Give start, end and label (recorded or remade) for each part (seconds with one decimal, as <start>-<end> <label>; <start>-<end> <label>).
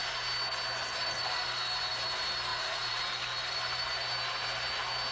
0.0-2.5 recorded; 2.5-3.0 remade; 3.0-5.1 recorded